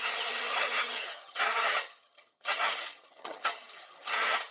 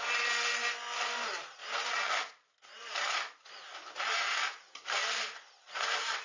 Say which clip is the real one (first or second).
second